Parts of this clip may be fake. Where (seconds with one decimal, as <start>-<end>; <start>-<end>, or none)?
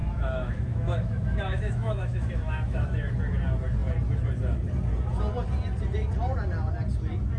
0.0-3.1